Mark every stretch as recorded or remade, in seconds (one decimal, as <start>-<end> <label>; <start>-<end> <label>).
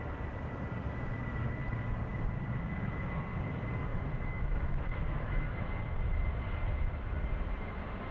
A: 0.0-3.9 recorded; 3.9-5.7 remade; 5.7-8.1 recorded